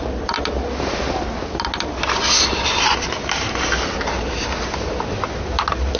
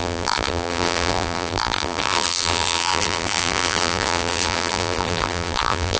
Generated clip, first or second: second